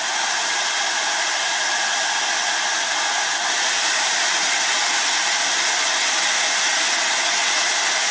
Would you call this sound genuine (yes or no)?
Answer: yes